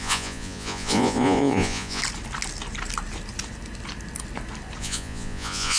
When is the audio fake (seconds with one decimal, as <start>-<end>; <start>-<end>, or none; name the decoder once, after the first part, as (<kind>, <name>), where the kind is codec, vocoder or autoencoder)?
0.0-2.0 (vocoder, Vocos); 4.8-5.8